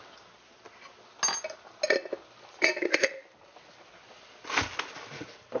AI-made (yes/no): no